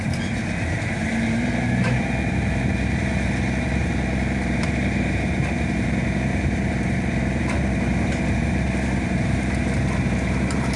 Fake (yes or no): yes